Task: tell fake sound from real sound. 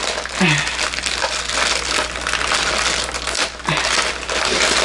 real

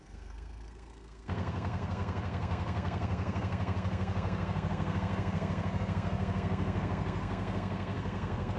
fake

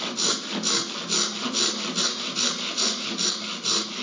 real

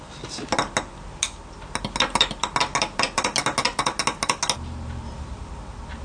real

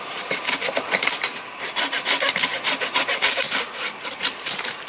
real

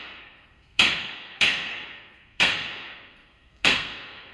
fake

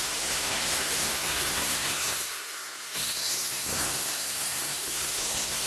fake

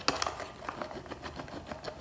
real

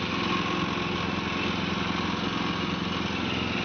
real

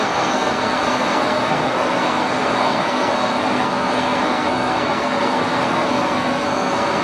fake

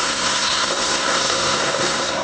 fake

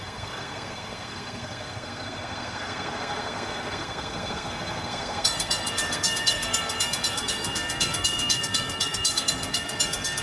fake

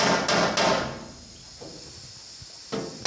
real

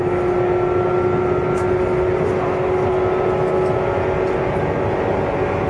real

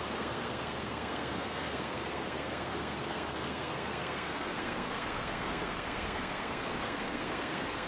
fake